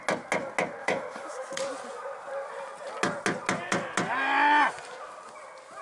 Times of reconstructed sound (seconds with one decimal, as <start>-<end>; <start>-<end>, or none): 0.8-1.6